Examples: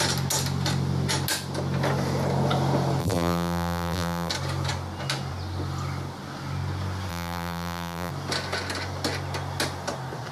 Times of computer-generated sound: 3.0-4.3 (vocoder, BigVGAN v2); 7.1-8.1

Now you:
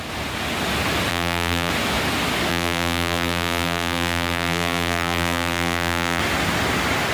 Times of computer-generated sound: 1.1-1.7 (vocoder, BigVGAN v2); 2.5-6.2

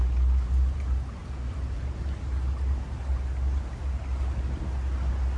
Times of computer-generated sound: none

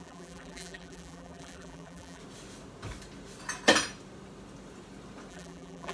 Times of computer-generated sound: 0.0-2.2 (vocoder, BigVGAN v2); 5.3-5.9